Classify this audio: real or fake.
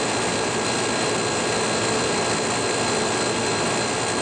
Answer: real